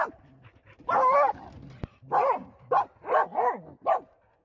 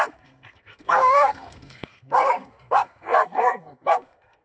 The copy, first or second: second